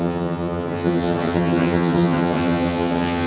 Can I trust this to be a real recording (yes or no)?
no